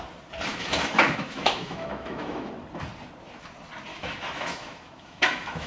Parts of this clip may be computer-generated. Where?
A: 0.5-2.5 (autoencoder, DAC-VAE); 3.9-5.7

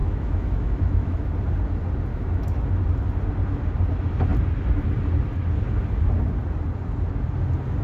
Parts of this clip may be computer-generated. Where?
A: 0.0-1.3 (autoencoder, DAC-VAE); 2.1-2.6

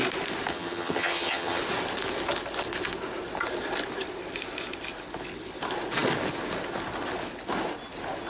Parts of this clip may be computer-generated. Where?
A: 0.5-1.6 (vocoder, HiFi-GAN)